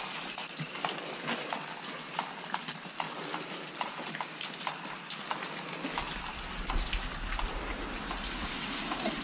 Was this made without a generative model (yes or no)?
yes